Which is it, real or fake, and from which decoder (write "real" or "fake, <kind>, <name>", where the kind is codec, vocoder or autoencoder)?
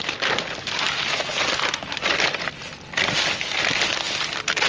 real